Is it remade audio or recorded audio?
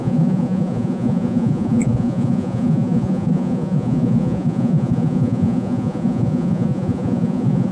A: remade